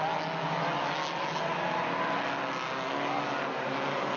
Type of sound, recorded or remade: recorded